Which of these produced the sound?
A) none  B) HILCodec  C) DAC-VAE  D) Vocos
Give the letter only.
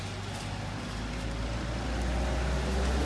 A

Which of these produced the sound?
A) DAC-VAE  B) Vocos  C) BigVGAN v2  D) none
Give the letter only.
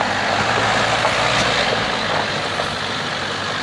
D